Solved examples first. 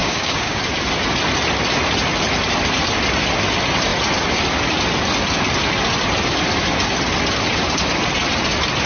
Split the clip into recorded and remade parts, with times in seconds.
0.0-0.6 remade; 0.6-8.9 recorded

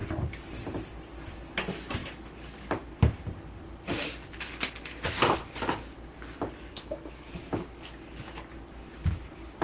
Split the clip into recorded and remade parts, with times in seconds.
0.0-6.7 recorded; 6.7-7.3 remade; 7.3-9.6 recorded